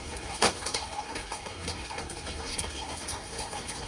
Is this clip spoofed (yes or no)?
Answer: yes